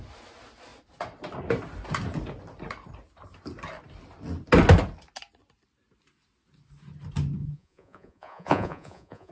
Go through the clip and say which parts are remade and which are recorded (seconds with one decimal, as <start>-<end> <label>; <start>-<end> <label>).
0.0-7.4 recorded; 7.4-9.3 remade